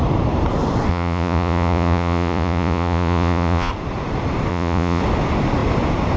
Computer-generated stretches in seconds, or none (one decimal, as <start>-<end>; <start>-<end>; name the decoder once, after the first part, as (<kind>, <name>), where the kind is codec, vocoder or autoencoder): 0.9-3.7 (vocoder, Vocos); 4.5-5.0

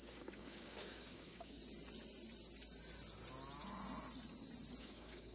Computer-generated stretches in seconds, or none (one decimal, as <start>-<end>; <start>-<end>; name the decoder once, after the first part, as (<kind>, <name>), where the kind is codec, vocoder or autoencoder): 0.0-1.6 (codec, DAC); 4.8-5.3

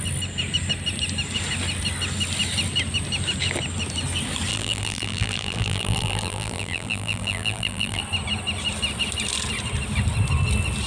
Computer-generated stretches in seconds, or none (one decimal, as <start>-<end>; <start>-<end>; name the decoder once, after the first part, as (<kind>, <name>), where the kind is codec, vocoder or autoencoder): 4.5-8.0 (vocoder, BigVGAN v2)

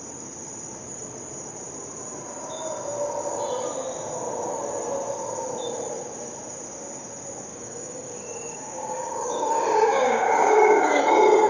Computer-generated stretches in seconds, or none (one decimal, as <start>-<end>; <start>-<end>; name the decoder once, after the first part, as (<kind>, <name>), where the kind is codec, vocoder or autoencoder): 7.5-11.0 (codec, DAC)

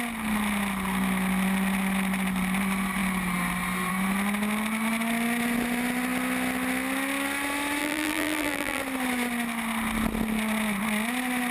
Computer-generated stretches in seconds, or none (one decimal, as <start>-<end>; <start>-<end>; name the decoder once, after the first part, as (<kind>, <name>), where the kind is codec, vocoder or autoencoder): 7.8-8.8 (vocoder, BigVGAN v2)

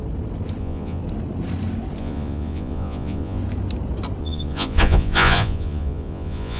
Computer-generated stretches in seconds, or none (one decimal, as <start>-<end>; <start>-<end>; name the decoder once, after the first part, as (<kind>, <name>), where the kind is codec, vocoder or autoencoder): 0.6-1.0 (vocoder, Vocos); 2.0-3.4; 4.2-6.6